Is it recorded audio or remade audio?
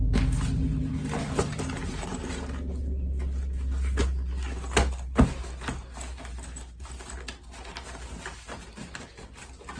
recorded